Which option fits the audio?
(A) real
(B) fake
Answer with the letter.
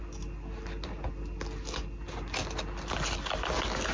A